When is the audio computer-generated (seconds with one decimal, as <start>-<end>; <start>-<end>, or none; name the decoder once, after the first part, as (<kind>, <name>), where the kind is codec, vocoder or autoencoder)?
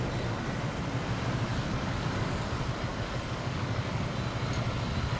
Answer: 1.5-2.5 (codec, DAC); 2.9-4.0